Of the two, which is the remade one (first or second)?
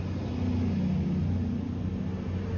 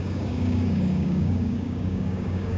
second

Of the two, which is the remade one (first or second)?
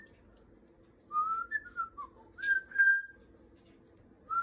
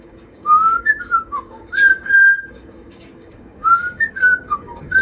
second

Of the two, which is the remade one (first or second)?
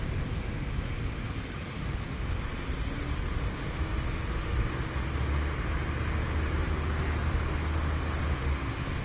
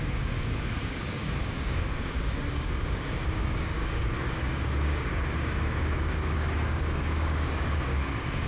second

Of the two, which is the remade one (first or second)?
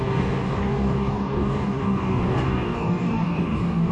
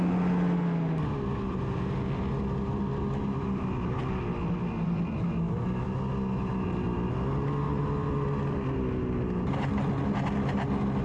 first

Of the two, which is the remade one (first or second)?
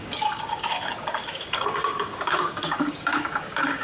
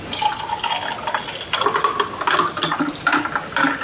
first